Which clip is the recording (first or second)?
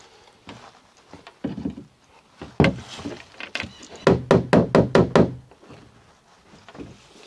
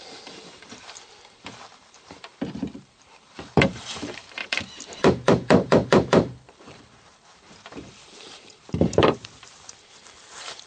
first